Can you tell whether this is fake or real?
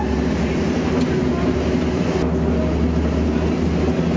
real